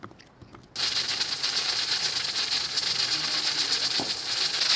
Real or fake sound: real